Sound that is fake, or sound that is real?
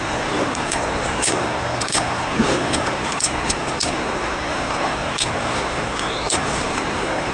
fake